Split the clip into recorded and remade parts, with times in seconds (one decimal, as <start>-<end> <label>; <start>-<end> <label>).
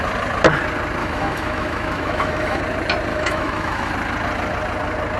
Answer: 0.0-1.0 recorded; 1.0-2.6 remade; 2.6-3.1 recorded; 3.1-3.9 remade; 3.9-5.2 recorded